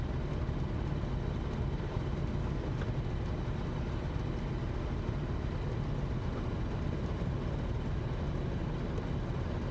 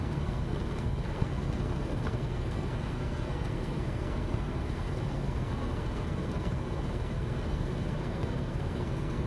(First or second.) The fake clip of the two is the second